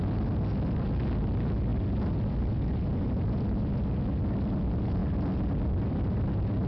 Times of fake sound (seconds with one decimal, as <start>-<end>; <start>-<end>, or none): none